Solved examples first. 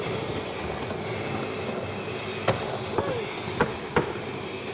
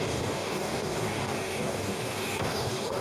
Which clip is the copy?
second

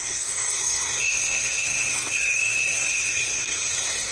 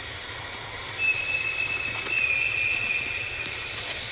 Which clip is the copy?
first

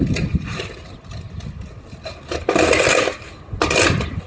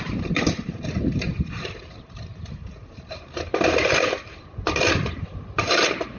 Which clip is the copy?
second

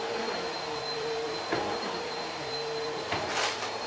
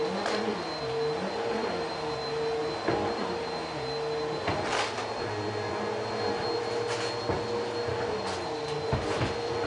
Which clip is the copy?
first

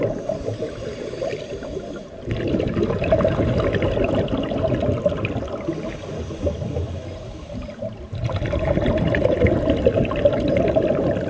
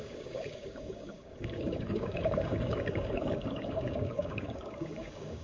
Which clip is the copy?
second